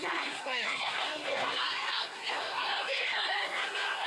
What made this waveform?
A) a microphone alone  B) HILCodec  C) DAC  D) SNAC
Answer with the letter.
D